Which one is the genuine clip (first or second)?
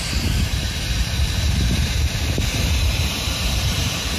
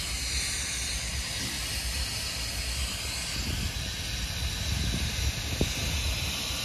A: second